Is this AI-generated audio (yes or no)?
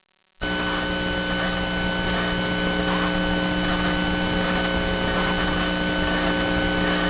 no